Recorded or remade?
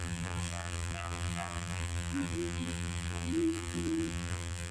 remade